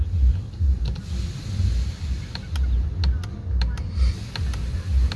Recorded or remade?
recorded